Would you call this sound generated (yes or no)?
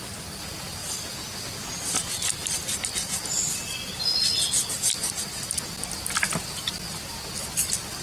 no